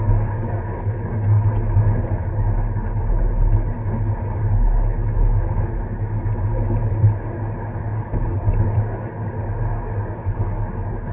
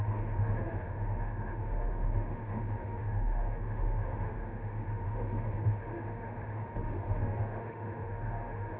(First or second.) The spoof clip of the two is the second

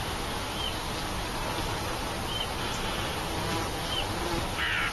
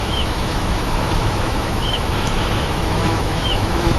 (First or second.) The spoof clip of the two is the second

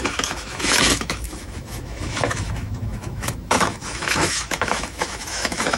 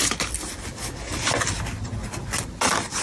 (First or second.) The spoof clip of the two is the first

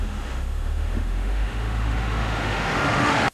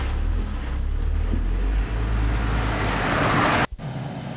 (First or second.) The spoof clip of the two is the first